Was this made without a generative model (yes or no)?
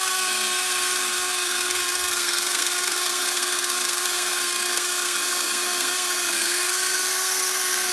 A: no